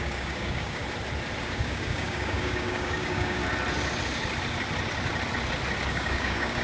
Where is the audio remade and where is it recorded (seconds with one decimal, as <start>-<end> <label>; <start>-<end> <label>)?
0.0-0.8 remade; 0.8-1.4 recorded; 1.4-3.4 remade; 3.4-5.9 recorded; 5.9-6.6 remade